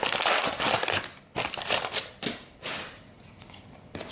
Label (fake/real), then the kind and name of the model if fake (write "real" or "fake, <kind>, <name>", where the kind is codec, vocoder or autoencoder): real